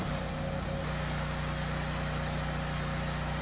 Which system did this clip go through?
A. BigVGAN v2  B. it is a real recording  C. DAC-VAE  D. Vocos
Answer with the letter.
B